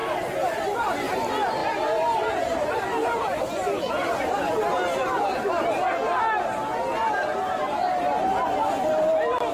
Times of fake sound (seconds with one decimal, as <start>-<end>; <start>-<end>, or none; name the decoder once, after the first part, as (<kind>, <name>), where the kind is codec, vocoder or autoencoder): none

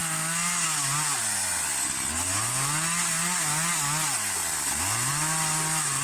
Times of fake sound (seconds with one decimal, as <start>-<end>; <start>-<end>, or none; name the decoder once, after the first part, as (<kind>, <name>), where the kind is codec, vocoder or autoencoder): none

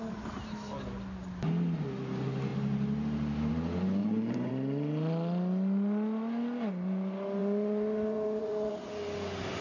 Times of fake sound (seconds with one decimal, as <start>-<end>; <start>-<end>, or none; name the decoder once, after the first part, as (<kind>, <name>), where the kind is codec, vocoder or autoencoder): 4.0-4.5 (vocoder, Vocos); 7.4-8.7

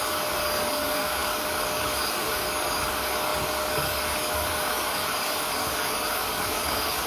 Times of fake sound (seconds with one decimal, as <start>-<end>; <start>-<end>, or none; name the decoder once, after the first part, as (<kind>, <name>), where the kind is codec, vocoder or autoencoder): 0.0-7.1 (codec, DAC)